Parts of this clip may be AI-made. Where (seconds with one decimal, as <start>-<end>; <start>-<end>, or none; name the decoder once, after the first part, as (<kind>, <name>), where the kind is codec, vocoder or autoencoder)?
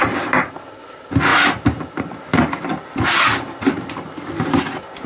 none